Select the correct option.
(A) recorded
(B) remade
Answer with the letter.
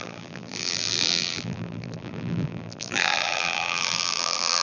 B